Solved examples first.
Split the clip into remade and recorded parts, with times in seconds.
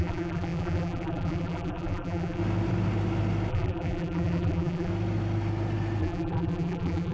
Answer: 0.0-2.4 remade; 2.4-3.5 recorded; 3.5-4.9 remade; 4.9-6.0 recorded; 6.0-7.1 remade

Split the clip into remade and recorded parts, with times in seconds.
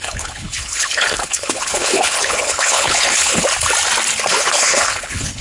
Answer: 0.0-3.4 remade; 3.4-4.3 recorded; 4.3-5.4 remade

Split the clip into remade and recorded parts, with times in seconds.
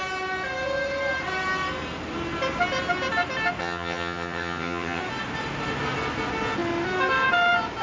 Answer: 0.0-3.6 recorded; 3.6-5.0 remade; 5.0-7.8 recorded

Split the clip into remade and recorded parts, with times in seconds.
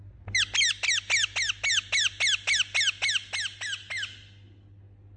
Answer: 0.0-5.2 recorded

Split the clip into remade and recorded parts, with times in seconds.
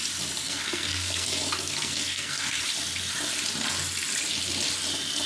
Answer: 0.0-0.4 recorded; 0.4-2.6 remade; 2.6-5.3 recorded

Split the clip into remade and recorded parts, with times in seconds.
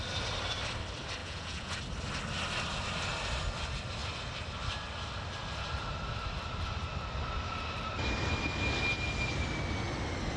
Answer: 0.0-1.2 recorded; 1.2-1.8 remade; 1.8-10.4 recorded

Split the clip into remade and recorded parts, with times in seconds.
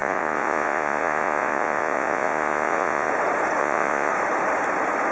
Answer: 0.0-3.1 remade; 3.1-3.6 recorded; 3.6-4.1 remade; 4.1-5.1 recorded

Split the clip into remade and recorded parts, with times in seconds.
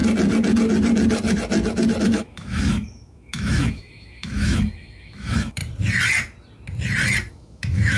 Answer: 0.0-2.0 recorded; 2.0-5.6 remade; 5.6-7.3 recorded; 7.3-8.0 remade